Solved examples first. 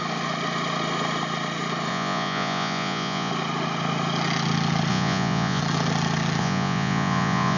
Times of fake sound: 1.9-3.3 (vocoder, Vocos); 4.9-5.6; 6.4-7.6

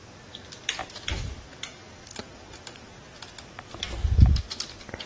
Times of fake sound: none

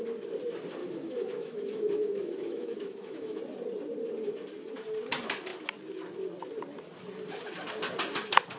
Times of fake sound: 0.8-3.4 (autoencoder, DAC-VAE)

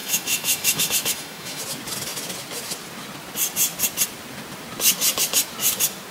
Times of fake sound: 0.0-1.6 (autoencoder, DAC-VAE)

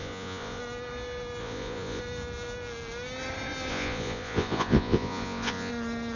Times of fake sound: 0.0-0.6 (vocoder, Vocos); 1.4-2.0; 3.7-5.7